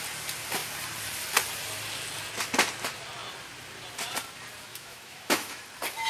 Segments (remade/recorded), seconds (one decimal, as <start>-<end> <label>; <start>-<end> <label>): 0.0-4.7 recorded; 4.7-5.6 remade; 5.6-6.1 recorded